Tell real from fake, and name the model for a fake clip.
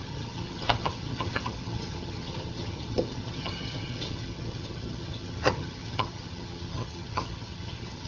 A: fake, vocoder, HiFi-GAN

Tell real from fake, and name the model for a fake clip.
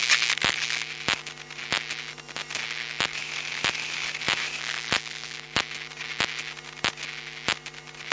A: real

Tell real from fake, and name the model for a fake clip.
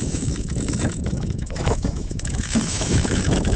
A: fake, autoencoder, DAC-VAE